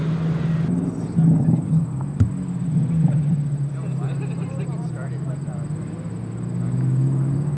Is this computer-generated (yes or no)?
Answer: no